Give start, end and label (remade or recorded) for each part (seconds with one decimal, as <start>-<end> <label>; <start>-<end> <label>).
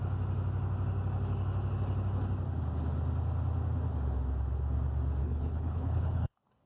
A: 0.0-5.2 recorded; 5.2-6.7 remade